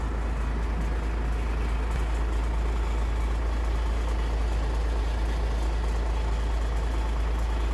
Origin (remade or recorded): recorded